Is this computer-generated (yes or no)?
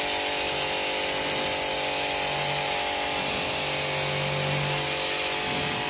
no